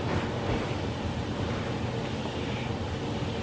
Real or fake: real